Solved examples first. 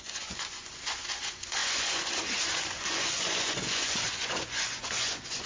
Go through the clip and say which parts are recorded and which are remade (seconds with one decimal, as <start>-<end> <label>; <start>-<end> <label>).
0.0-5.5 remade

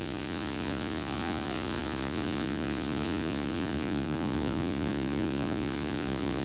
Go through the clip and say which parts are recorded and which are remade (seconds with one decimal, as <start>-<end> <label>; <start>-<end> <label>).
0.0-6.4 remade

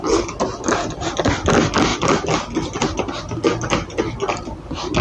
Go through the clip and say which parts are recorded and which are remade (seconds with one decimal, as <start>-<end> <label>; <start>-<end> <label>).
0.0-5.0 recorded

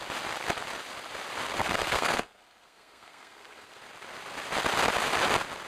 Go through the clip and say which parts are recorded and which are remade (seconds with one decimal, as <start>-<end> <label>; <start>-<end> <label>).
0.0-1.6 recorded; 1.6-3.8 remade; 3.8-5.7 recorded

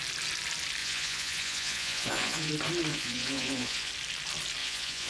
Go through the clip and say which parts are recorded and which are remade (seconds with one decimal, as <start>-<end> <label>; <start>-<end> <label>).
0.0-0.8 recorded; 0.8-2.5 remade; 2.5-2.9 recorded; 2.9-3.9 remade; 3.9-4.6 recorded; 4.6-5.1 remade